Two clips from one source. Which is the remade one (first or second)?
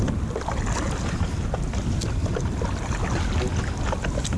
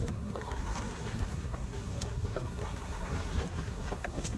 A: second